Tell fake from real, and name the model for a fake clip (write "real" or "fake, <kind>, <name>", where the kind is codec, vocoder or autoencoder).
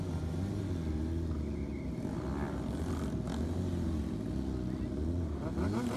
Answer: real